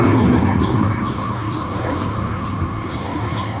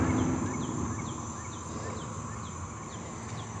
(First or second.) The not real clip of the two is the first